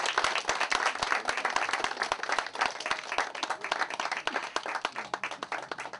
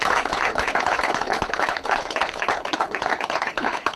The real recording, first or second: first